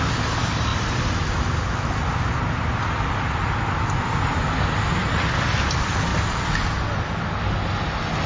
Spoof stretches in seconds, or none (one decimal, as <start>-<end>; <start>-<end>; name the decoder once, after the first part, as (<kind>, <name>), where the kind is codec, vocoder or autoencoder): none